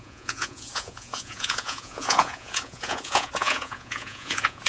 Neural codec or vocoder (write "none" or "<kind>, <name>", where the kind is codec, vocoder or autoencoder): vocoder, Vocos